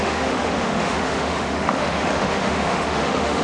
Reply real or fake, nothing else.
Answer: fake